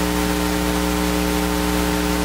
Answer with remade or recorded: recorded